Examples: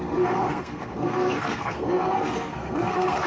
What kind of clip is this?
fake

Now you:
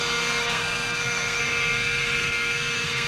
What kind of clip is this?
fake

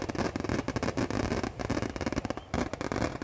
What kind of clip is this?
real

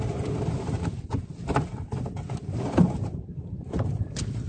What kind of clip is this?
real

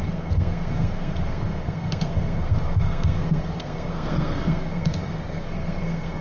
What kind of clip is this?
fake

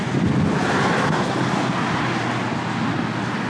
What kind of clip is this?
real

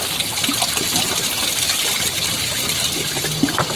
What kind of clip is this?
real